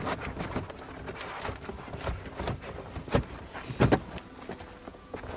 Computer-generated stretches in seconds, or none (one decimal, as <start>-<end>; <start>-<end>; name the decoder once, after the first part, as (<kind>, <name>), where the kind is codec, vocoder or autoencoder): 4.9-5.4 (vocoder, Vocos)